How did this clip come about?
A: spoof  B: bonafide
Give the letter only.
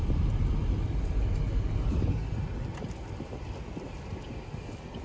B